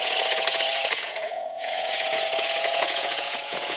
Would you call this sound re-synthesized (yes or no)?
yes